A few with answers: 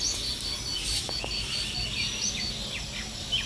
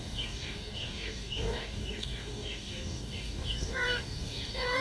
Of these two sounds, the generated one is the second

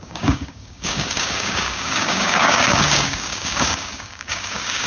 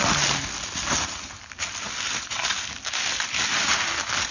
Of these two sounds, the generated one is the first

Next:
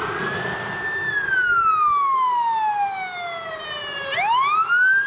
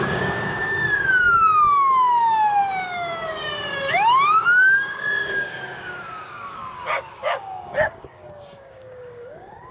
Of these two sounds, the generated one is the second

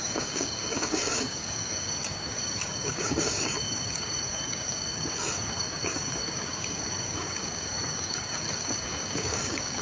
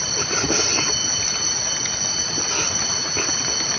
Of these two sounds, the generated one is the first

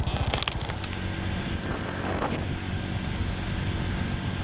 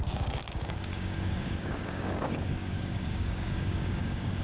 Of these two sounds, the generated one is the second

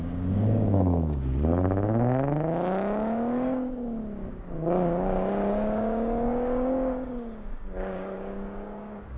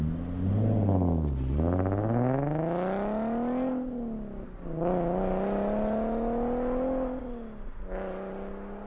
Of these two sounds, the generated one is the first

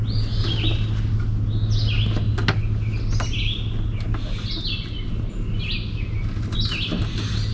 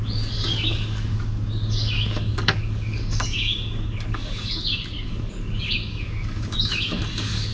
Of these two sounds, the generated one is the second